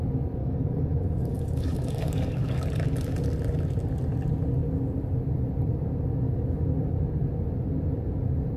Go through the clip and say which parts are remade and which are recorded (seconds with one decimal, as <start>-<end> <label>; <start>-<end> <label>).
0.0-0.4 recorded; 0.4-2.6 remade; 2.6-8.6 recorded